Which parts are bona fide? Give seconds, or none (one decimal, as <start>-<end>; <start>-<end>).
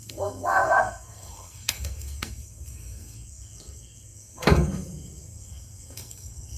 none